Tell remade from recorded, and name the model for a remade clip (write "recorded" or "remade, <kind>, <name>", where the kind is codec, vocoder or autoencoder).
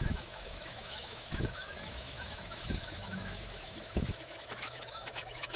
remade, autoencoder, DAC-VAE